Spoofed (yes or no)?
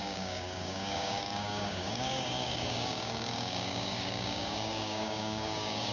yes